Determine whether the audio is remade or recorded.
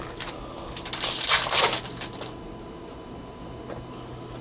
recorded